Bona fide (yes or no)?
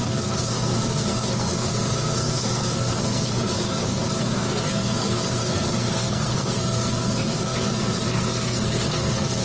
no